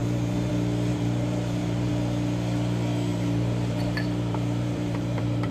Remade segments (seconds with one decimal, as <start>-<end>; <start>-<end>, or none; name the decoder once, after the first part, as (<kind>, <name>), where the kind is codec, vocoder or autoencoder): 0.0-0.5 (vocoder, BigVGAN v2); 0.9-1.9; 3.1-5.5